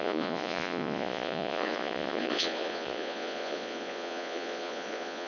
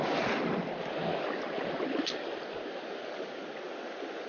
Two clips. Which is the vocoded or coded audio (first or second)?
first